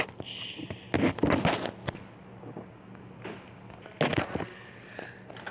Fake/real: real